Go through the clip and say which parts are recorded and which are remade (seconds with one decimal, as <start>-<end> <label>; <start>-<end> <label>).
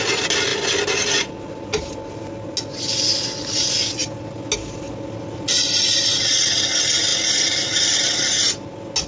0.0-9.1 recorded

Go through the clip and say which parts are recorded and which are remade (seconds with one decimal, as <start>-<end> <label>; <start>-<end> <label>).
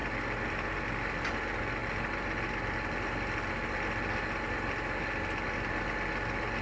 0.0-6.6 recorded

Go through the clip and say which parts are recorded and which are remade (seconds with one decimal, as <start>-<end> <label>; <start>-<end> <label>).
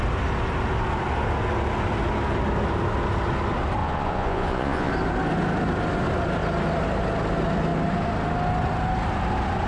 0.0-3.8 recorded; 3.8-4.9 remade; 4.9-9.7 recorded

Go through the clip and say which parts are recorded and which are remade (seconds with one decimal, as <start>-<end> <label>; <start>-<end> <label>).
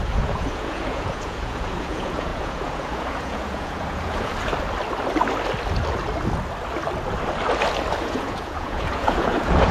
0.0-4.3 remade; 4.3-8.0 recorded; 8.0-9.7 remade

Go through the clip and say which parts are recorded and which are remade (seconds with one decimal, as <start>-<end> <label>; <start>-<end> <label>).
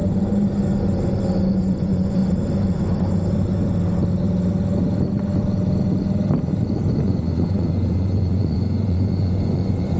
0.0-1.5 recorded; 1.5-2.2 remade; 2.2-6.9 recorded; 6.9-10.0 remade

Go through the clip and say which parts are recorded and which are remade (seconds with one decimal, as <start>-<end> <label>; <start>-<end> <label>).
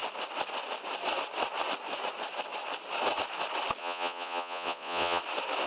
0.0-3.8 recorded; 3.8-5.2 remade; 5.2-5.7 recorded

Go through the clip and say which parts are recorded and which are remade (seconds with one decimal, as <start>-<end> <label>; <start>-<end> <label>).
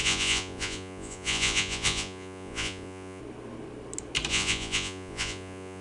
0.0-3.2 remade; 3.2-4.3 recorded; 4.3-5.8 remade